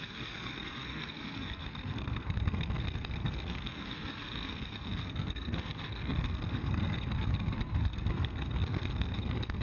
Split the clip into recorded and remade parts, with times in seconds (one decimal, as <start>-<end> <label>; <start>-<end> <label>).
0.0-9.6 remade